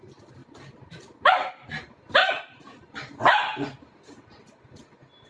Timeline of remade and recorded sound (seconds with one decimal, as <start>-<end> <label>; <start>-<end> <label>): 0.0-2.2 recorded; 2.2-2.9 remade; 2.9-3.5 recorded; 3.5-4.5 remade; 4.5-5.3 recorded